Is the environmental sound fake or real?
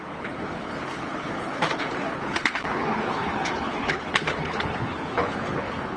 fake